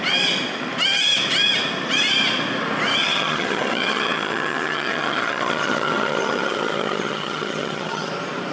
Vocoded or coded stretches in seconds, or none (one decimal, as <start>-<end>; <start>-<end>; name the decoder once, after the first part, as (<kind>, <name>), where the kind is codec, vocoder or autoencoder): 3.0-8.1 (vocoder, HiFi-GAN)